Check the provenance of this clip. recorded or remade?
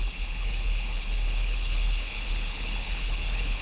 remade